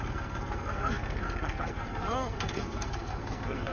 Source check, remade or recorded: remade